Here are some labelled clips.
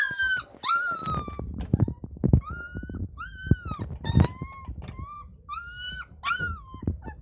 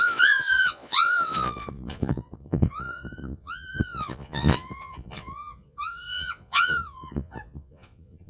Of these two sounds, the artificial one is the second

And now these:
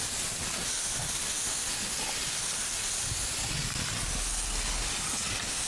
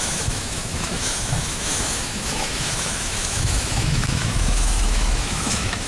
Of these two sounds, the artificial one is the second